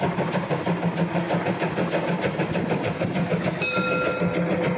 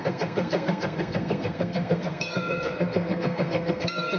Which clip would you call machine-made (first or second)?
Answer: second